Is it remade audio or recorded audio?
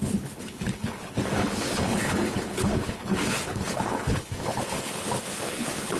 remade